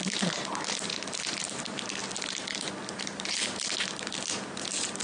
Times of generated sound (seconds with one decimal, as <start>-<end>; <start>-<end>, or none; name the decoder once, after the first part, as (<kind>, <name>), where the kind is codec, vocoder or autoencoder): none